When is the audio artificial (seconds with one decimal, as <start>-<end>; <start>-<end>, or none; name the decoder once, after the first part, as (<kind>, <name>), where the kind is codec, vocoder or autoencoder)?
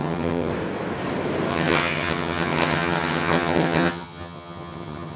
0.0-0.5 (vocoder, HiFi-GAN); 1.5-5.2